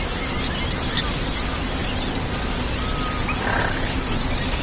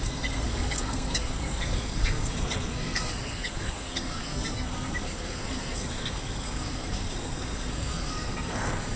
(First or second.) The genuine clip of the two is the first